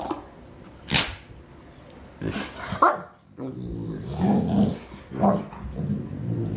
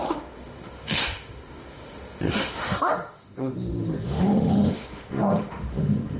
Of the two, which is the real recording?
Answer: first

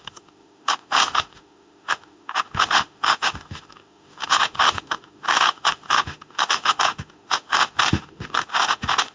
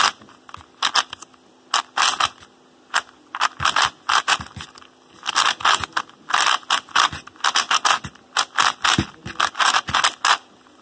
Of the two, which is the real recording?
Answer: second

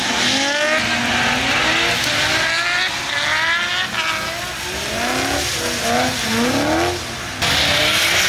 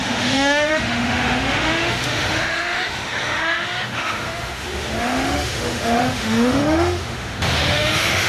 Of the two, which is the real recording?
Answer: first